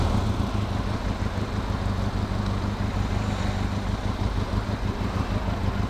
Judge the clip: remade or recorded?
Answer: recorded